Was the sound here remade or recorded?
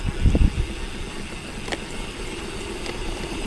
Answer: recorded